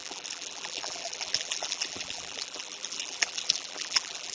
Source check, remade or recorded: remade